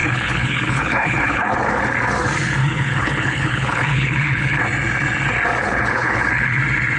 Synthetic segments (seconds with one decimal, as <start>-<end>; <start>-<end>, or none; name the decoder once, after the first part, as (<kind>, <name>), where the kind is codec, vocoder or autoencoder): 0.0-1.8 (codec, HILCodec); 2.6-4.6; 5.6-6.6